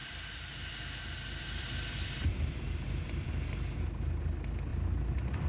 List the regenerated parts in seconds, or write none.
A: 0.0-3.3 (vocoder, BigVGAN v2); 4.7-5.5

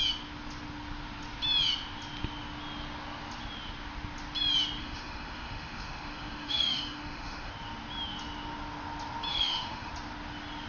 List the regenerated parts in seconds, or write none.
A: 4.8-7.5 (autoencoder, DAC-VAE); 9.3-9.9

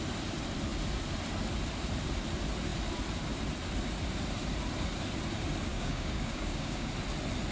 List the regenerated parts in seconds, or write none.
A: 5.7-6.9 (codec, DAC)